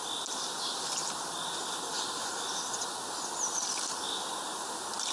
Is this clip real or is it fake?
real